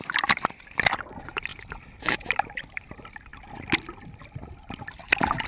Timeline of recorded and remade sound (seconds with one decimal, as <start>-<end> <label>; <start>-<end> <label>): 0.0-5.5 recorded